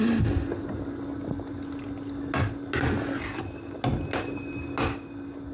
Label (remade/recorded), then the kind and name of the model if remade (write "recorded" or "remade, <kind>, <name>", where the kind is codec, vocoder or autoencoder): recorded